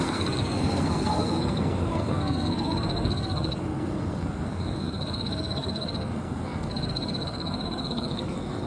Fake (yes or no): yes